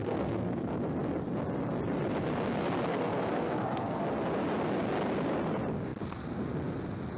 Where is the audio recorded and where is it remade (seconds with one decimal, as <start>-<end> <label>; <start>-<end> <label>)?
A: 0.0-0.7 remade; 0.7-2.9 recorded; 2.9-4.0 remade; 4.0-7.2 recorded